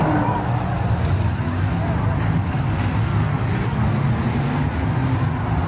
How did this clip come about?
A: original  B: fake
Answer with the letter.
A